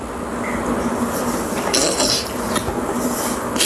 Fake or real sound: real